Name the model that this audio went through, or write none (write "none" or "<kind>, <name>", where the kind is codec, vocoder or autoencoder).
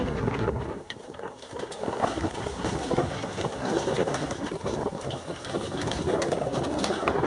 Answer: codec, SNAC